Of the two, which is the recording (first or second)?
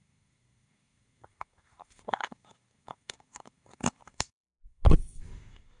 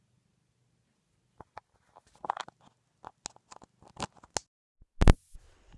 second